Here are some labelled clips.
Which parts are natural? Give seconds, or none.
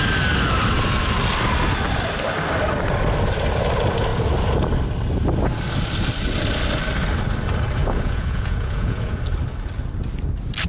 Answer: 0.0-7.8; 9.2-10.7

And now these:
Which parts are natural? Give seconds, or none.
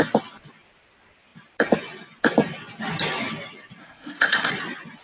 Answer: 0.0-3.8; 4.5-5.0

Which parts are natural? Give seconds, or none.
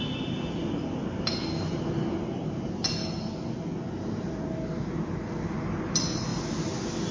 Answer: 0.0-7.1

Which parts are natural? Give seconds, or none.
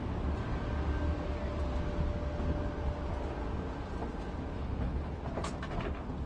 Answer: 0.0-4.5; 5.2-6.3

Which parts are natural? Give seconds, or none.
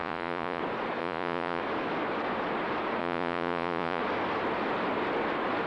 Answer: 0.6-1.0; 1.6-3.0; 4.0-5.7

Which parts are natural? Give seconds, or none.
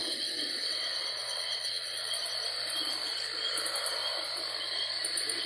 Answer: 2.1-5.5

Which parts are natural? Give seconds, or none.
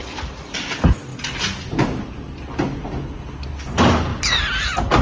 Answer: 0.0-5.0